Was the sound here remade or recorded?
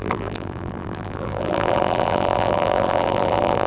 remade